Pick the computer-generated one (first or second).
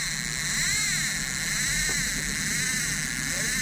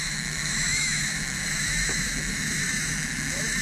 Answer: second